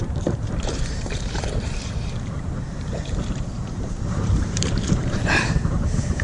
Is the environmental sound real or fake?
fake